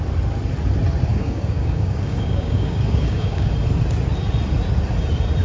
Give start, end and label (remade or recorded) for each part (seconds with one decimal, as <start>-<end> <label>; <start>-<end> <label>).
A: 0.0-1.1 recorded; 1.1-3.5 remade; 3.5-5.4 recorded